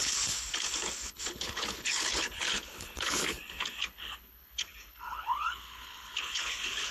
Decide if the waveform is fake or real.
fake